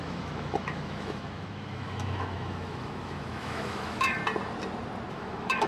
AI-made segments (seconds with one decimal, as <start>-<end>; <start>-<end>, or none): 0.0-4.2; 5.1-5.7

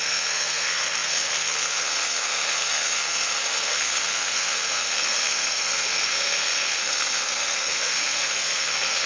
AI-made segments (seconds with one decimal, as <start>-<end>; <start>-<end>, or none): 0.0-9.1

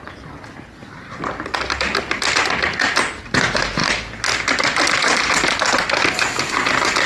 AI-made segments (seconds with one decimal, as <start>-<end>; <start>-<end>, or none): none

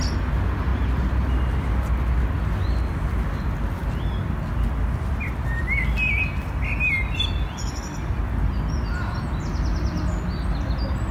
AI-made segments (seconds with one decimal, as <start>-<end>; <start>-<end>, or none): none

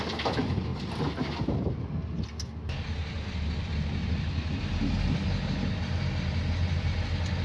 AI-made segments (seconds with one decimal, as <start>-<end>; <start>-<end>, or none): none